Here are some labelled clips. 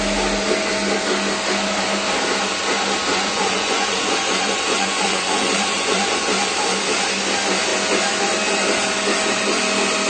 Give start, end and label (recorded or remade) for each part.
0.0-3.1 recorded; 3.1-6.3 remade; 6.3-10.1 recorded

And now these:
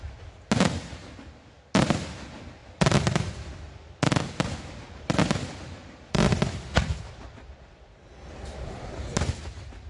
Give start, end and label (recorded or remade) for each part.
0.0-2.6 recorded; 2.6-4.2 remade; 4.2-5.8 recorded; 5.8-9.4 remade; 9.4-9.9 recorded

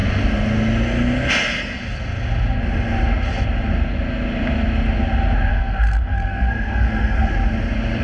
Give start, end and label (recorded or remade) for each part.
0.0-5.5 recorded; 5.5-7.3 remade; 7.3-8.0 recorded